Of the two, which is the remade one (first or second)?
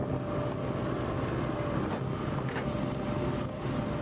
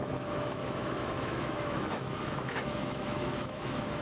second